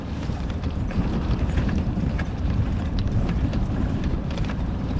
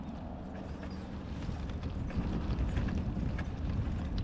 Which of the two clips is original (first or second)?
second